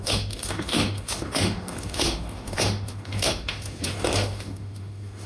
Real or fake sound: fake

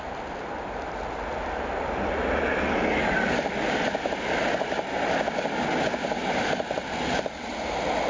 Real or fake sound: real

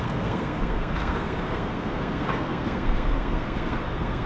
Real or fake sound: fake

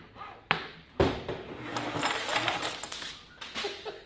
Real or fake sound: real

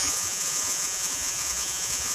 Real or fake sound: fake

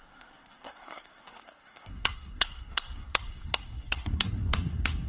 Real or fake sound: fake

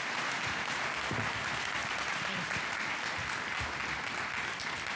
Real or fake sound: real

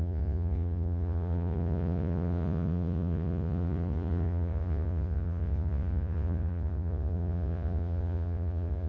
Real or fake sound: fake